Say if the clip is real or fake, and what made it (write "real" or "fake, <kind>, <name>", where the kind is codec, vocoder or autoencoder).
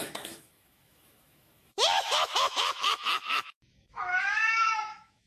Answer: fake, autoencoder, DAC-VAE